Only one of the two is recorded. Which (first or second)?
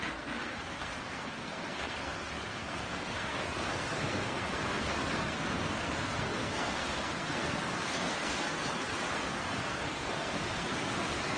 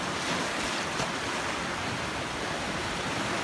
second